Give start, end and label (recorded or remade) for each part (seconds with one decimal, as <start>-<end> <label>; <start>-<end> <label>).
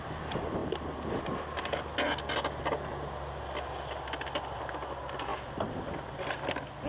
0.0-6.9 recorded